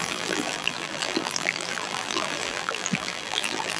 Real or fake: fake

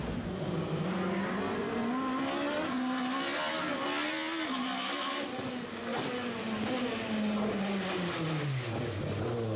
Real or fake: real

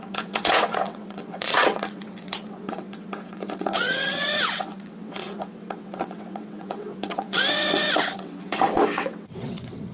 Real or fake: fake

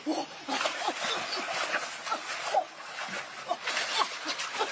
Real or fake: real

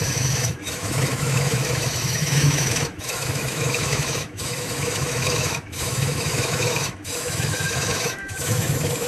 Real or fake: fake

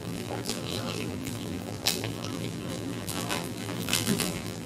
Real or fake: fake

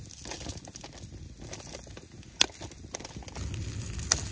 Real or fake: real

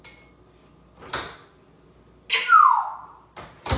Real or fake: real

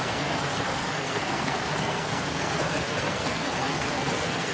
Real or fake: fake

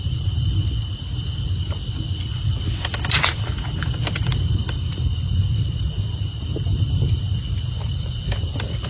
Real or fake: real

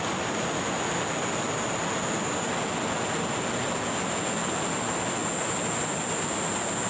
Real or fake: real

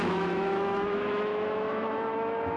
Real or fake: fake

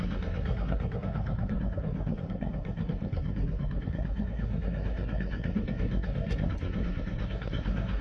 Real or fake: fake